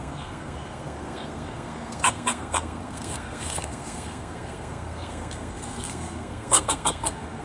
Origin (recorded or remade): remade